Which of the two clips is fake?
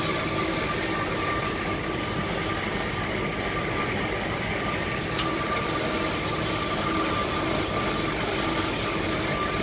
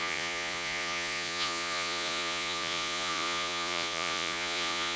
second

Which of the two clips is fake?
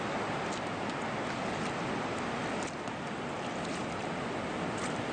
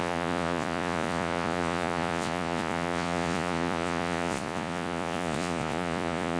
second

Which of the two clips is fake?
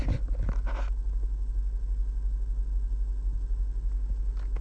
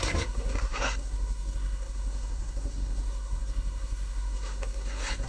second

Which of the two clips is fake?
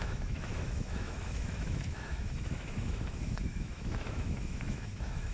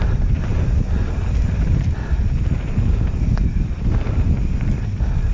first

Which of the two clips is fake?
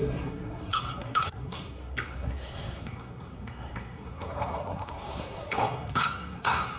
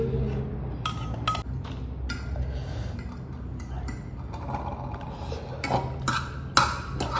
first